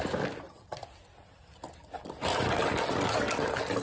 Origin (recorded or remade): recorded